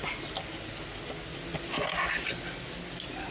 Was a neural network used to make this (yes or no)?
no